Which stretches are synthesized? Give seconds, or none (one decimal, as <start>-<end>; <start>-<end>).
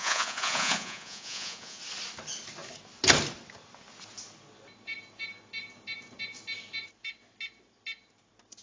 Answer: 0.0-1.8